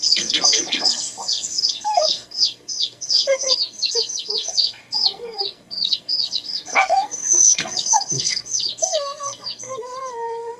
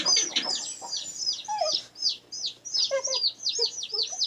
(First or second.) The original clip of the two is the second